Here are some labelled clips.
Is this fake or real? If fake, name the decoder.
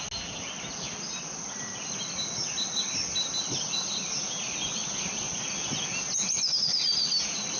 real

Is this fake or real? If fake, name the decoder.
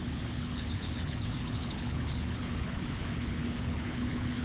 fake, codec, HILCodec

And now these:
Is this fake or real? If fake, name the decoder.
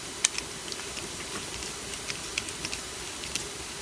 real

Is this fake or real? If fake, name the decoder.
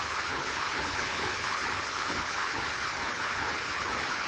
fake, codec, HILCodec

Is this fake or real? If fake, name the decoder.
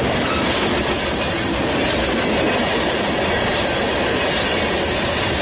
real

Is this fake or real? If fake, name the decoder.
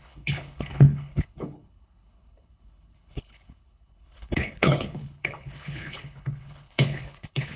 fake, codec, HILCodec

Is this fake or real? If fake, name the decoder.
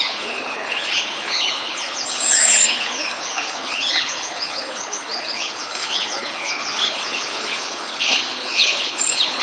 fake, codec, HILCodec